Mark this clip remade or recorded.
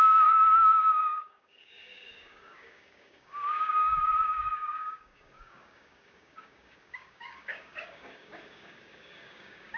remade